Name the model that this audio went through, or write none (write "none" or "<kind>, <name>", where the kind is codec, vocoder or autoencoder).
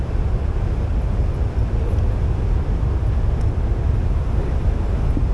none